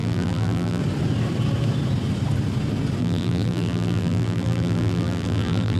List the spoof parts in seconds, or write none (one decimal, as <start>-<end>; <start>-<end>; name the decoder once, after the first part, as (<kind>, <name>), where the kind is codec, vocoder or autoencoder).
0.0-0.8 (vocoder, BigVGAN v2); 3.0-5.8